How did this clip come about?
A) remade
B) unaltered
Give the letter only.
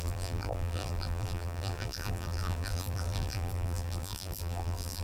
A